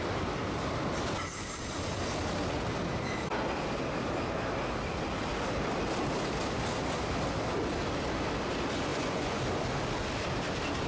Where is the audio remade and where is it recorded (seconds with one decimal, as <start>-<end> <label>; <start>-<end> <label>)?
0.0-8.9 recorded; 8.9-9.4 remade; 9.4-10.9 recorded

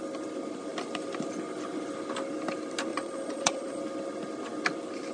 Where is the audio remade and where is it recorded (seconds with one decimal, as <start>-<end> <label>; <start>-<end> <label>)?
0.0-2.9 recorded; 2.9-3.8 remade; 3.8-5.1 recorded

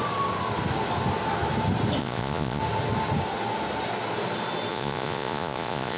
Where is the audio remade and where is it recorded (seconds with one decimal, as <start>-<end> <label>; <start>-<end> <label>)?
0.0-2.0 recorded; 2.0-2.6 remade; 2.6-4.7 recorded; 4.7-6.0 remade

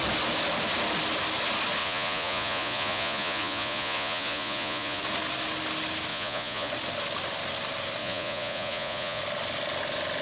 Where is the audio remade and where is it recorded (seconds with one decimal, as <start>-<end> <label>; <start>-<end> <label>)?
0.0-1.8 recorded; 1.8-5.0 remade; 5.0-6.1 recorded; 6.1-6.7 remade; 6.7-8.0 recorded; 8.0-9.2 remade; 9.2-10.2 recorded